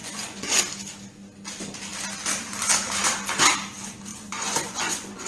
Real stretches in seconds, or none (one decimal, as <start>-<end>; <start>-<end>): 0.6-4.1